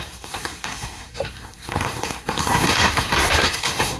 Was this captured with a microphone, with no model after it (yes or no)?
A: no